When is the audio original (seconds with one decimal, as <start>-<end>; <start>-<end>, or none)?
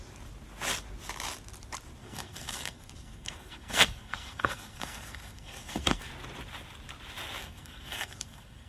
0.0-2.0; 6.1-7.4